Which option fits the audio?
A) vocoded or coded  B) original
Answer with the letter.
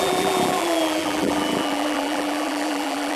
A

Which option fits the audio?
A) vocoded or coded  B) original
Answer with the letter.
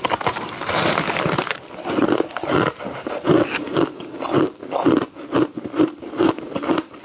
B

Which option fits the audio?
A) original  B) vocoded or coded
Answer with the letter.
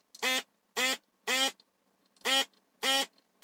A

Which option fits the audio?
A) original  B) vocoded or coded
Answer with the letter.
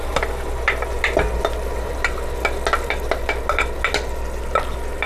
A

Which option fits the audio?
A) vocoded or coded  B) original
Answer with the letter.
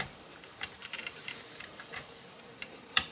A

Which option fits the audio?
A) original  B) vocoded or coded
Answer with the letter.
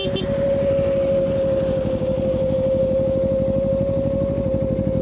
A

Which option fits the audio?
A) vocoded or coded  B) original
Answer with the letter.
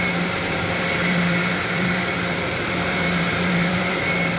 A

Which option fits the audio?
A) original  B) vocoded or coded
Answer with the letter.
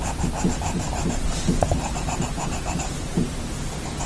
A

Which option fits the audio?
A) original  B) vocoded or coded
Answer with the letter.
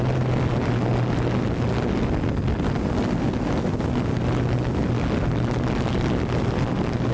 A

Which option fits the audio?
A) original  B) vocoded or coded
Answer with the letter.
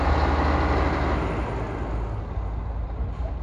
A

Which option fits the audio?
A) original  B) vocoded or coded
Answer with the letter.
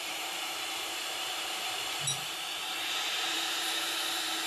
B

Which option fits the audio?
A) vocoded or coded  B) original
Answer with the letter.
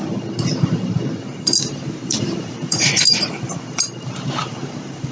A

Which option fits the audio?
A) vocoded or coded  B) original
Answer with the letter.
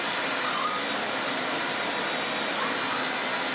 B